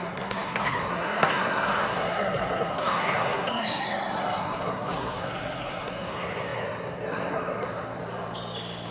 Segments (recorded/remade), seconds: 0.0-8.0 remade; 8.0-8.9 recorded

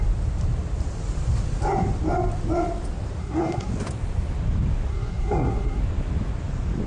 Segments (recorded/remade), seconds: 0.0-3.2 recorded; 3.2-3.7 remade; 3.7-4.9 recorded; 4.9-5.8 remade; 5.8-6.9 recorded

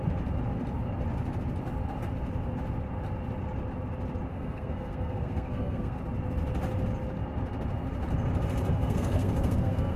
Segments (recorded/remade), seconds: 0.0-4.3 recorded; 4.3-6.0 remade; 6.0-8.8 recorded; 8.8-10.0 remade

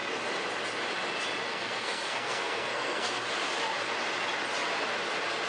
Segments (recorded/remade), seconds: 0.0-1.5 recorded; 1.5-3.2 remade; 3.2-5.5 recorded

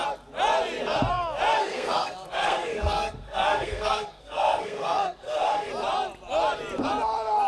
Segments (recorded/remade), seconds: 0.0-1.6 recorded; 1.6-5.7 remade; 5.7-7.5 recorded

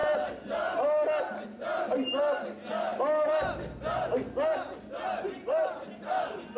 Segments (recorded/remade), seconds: 0.0-6.6 recorded